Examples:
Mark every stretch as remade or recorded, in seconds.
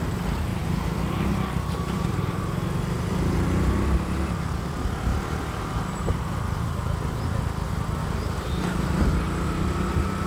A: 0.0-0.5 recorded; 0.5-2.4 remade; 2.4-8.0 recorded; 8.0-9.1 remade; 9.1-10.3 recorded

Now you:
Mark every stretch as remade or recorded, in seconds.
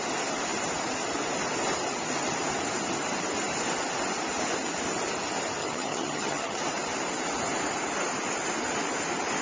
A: 0.0-5.6 recorded; 5.6-6.6 remade; 6.6-9.4 recorded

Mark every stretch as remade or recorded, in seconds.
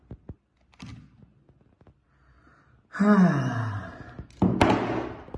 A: 0.0-5.4 recorded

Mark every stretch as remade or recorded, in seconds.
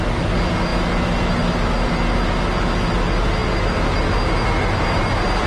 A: 0.0-5.5 recorded